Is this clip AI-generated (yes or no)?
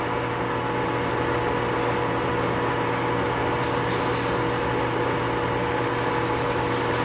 no